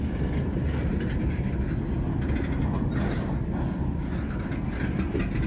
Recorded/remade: recorded